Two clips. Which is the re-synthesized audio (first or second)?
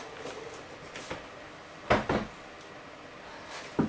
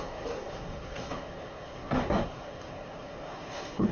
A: second